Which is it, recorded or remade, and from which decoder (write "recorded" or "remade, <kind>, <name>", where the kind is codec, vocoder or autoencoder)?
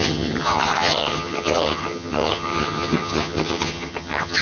remade, vocoder, HiFi-GAN